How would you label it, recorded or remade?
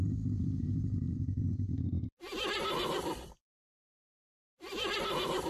remade